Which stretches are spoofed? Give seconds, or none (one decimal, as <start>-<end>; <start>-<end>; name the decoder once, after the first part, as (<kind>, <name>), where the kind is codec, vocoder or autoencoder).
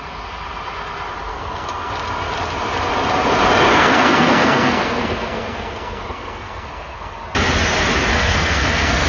1.3-1.9 (codec, SNAC); 3.7-7.2; 8.1-9.1